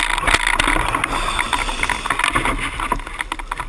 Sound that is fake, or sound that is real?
real